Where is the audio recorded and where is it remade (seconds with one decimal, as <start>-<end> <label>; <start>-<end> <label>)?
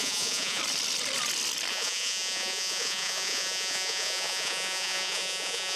0.0-0.6 remade; 0.6-1.7 recorded; 1.7-5.8 remade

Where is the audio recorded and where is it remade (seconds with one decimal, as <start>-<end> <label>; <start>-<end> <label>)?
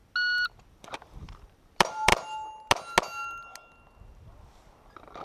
0.0-0.7 recorded; 0.7-2.1 remade; 2.1-4.8 recorded; 4.8-5.2 remade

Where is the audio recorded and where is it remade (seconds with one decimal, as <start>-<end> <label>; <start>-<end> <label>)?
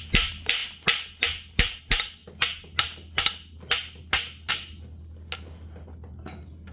0.0-6.7 recorded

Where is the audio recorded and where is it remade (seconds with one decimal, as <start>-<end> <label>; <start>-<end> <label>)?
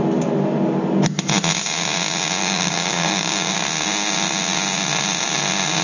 0.0-2.4 recorded; 2.4-3.5 remade; 3.5-5.8 recorded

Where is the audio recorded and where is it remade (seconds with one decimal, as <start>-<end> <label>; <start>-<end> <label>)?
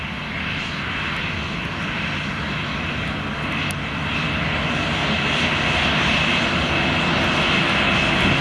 0.0-8.4 recorded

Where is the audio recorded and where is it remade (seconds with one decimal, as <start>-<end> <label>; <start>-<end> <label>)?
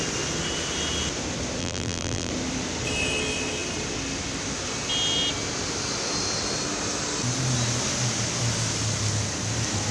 0.0-1.6 recorded; 1.6-2.3 remade; 2.3-9.9 recorded